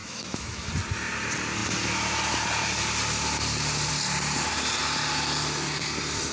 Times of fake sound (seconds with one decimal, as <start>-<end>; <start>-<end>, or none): 0.0-0.7